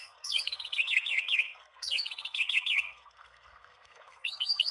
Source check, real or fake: fake